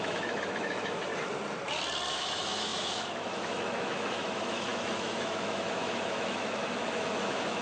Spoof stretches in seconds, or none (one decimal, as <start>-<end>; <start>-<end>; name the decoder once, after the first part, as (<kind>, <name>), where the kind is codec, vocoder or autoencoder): 0.0-1.1 (autoencoder, DAC-VAE); 2.1-7.6